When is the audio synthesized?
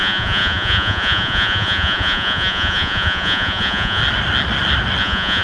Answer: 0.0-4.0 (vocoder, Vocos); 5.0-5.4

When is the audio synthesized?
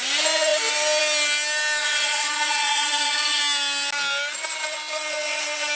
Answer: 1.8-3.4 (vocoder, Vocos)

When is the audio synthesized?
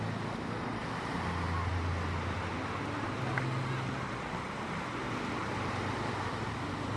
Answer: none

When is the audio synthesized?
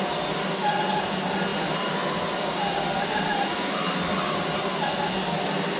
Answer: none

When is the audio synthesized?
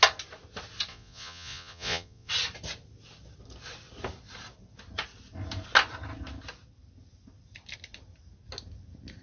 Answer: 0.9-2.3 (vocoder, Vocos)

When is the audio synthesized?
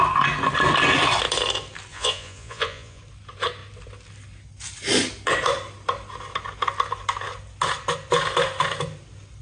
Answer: 1.9-3.0 (vocoder, Vocos)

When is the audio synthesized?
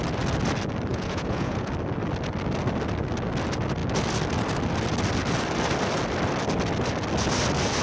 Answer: 0.9-1.7 (vocoder, Vocos)